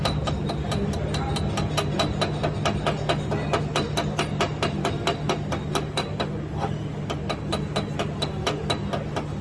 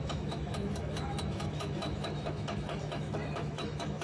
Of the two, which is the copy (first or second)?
second